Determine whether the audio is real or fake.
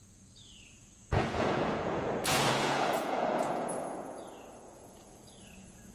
fake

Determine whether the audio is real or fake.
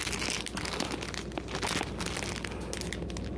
real